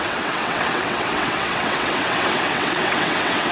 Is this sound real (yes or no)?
no